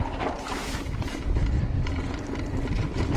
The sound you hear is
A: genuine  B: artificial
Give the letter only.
A